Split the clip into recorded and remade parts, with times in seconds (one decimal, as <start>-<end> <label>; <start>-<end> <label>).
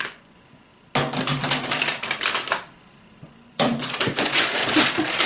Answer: 0.0-0.7 remade; 0.7-3.2 recorded; 3.2-4.6 remade; 4.6-5.3 recorded